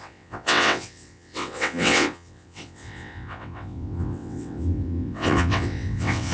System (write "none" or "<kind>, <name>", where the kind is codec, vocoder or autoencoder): vocoder, WaveNeXt